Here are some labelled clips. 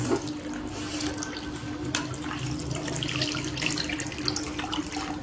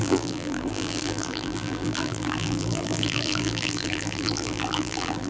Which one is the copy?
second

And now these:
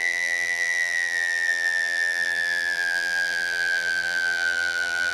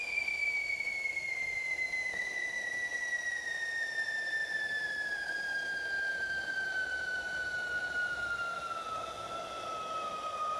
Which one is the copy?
first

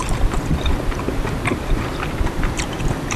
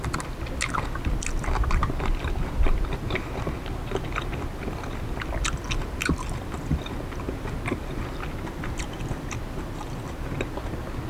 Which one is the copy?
first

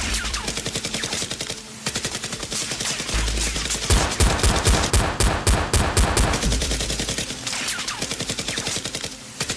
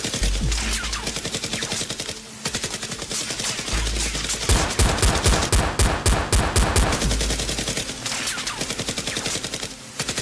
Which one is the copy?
first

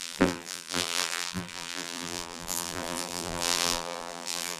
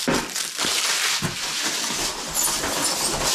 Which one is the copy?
first